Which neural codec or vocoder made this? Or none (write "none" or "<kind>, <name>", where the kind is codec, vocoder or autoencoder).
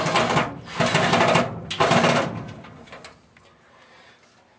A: none